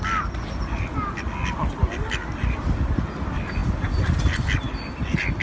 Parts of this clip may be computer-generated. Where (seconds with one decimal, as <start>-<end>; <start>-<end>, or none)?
none